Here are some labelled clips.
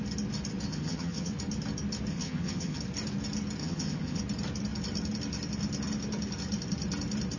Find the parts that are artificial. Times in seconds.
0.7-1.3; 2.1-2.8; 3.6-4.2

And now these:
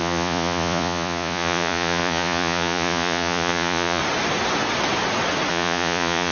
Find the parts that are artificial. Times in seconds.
0.0-4.0; 5.5-6.3

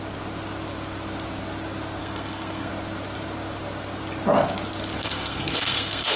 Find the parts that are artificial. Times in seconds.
2.0-2.7; 5.0-6.2

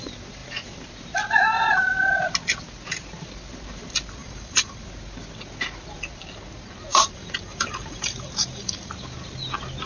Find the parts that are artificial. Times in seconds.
4.2-4.8; 6.9-8.9

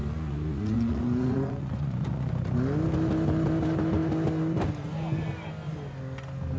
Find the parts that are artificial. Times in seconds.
0.0-2.3